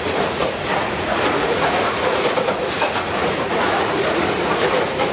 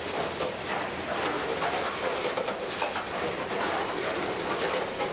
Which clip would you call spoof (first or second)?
first